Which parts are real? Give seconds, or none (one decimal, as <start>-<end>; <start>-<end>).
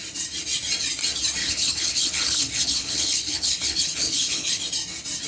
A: 0.0-1.4; 4.6-5.3